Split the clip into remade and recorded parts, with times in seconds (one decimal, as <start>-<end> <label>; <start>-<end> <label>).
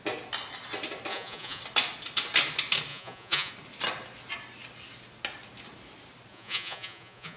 0.0-1.1 recorded; 1.1-1.6 remade; 1.6-2.9 recorded; 2.9-3.5 remade; 3.5-6.3 recorded; 6.3-7.4 remade